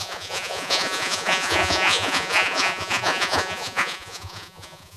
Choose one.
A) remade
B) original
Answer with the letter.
A